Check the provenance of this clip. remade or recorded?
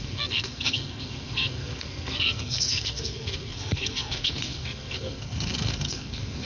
remade